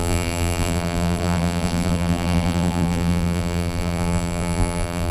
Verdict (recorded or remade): remade